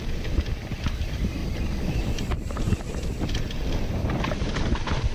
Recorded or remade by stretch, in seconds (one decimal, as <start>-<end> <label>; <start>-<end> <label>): 0.0-5.1 recorded